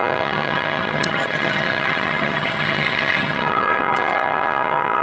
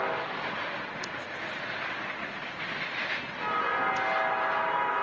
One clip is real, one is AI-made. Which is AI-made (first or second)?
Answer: first